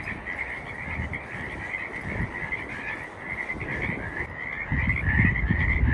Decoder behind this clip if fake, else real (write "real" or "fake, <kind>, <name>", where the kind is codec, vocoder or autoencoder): real